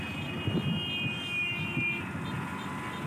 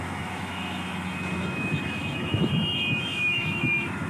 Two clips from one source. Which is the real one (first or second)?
first